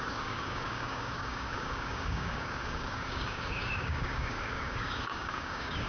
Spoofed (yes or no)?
yes